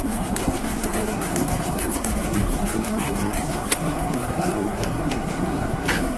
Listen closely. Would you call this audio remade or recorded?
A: remade